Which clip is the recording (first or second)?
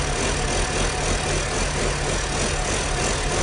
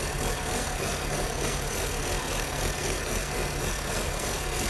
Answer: first